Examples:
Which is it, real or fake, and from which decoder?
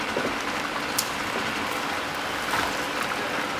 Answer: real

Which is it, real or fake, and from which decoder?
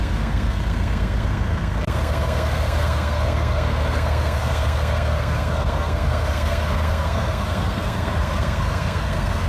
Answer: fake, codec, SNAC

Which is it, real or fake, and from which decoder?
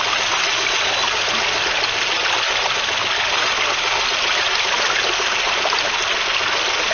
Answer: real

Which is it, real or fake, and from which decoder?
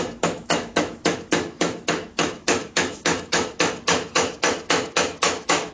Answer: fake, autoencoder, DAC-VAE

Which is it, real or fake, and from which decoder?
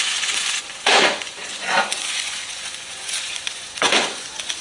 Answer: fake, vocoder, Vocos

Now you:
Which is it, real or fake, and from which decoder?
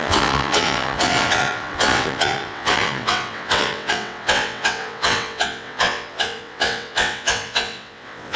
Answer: fake, vocoder, WaveNeXt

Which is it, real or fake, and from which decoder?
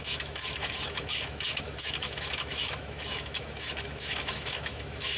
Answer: fake, autoencoder, DAC-VAE